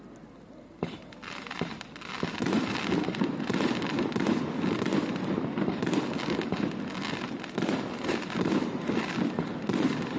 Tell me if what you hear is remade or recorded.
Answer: recorded